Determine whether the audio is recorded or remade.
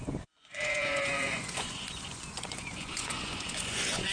remade